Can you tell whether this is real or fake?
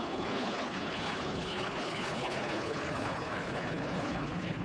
fake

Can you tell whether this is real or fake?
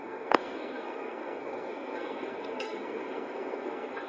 fake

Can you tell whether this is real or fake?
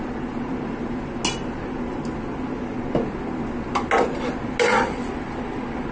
real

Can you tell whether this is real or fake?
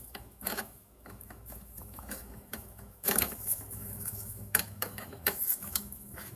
fake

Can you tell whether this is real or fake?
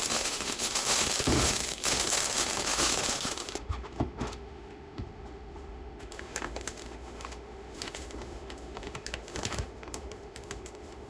fake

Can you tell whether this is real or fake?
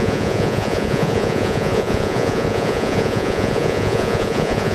fake